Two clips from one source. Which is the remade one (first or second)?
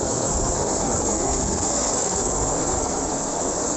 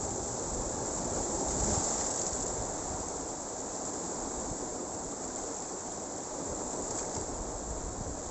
first